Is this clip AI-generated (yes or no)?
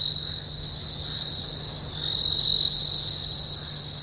no